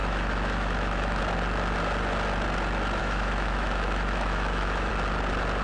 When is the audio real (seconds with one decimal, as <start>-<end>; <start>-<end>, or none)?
1.2-3.0; 4.9-5.6